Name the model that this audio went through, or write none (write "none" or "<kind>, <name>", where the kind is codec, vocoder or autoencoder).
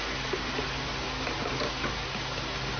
none